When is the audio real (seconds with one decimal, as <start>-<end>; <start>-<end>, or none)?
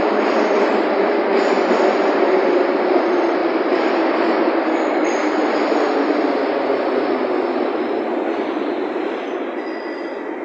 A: 0.0-10.4